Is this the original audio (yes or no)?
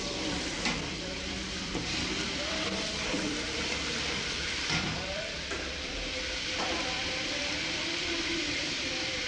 no